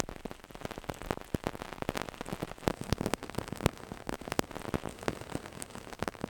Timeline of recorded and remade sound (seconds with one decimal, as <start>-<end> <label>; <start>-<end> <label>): 0.0-2.7 recorded; 2.7-4.5 remade; 4.5-4.9 recorded; 4.9-6.3 remade